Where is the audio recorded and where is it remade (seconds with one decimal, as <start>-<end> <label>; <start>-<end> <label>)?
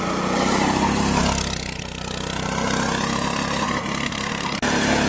0.0-5.1 recorded